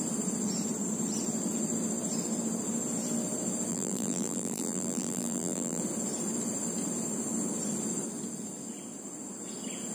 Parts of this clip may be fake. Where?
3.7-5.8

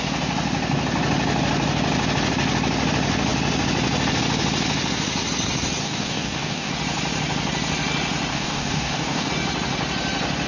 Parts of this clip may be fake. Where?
5.8-6.7; 8.3-9.3

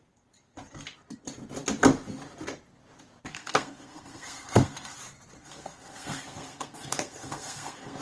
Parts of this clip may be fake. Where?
3.3-5.0; 5.4-8.0